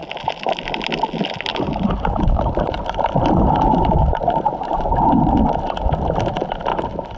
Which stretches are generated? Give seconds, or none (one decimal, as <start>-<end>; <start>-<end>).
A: 1.5-5.3; 6.7-7.2